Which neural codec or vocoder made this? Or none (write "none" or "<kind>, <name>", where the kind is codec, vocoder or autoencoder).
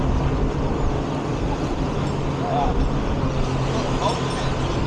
none